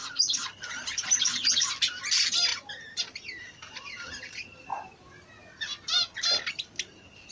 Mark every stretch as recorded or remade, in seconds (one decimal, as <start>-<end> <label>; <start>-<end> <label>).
0.0-7.3 recorded